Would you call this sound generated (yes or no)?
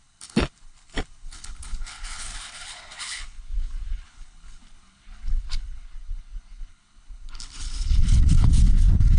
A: yes